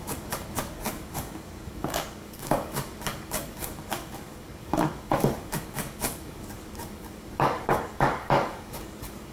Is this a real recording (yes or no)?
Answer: no